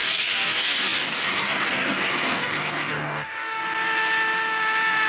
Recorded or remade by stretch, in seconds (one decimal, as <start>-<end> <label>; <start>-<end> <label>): 0.0-3.6 remade; 3.6-5.1 recorded